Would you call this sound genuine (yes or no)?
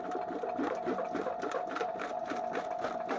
yes